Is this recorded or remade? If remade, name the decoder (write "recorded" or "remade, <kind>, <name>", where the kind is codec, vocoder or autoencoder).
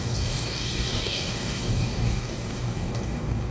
remade, codec, DAC